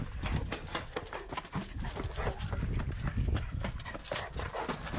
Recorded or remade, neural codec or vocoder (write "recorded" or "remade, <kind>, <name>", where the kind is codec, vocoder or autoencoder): recorded